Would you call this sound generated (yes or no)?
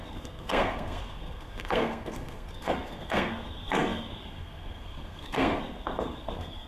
yes